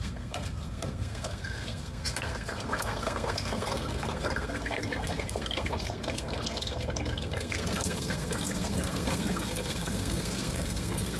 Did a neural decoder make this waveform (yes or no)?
yes